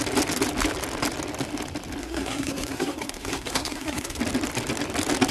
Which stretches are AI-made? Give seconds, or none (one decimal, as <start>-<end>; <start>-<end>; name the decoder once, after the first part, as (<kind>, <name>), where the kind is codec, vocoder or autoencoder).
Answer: 2.0-4.2 (codec, SNAC)